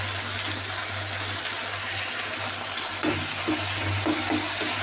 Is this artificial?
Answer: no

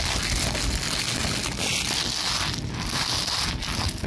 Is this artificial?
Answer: no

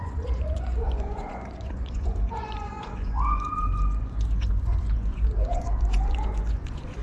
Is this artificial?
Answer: yes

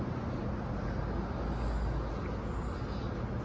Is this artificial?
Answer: no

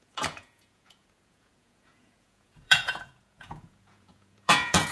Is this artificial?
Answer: yes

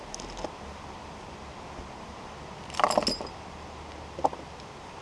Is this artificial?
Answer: no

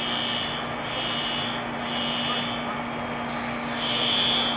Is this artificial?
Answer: no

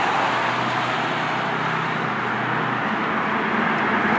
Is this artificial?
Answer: no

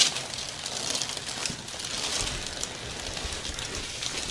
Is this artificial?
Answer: no